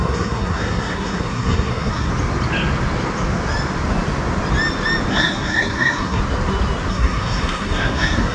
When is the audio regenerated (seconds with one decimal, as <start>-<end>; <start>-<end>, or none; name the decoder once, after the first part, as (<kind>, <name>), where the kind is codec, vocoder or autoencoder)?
0.0-2.1 (codec, SNAC); 5.1-6.2; 6.9-8.3